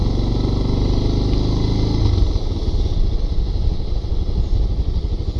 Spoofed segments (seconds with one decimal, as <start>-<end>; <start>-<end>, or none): none